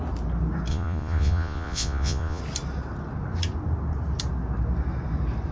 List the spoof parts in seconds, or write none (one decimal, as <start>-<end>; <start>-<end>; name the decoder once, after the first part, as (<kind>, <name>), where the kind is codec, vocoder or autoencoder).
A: 0.7-2.4 (vocoder, Vocos)